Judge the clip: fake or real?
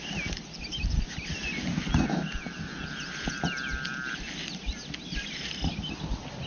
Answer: real